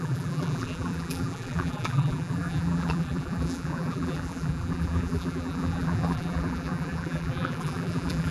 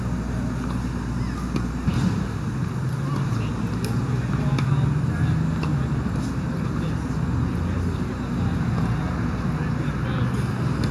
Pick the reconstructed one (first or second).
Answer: first